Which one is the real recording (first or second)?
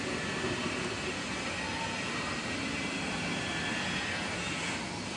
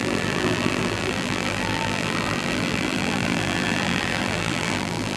first